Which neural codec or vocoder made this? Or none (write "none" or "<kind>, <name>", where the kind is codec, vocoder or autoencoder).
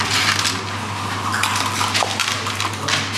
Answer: none